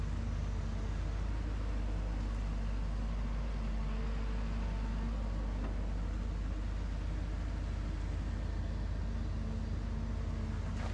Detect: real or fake real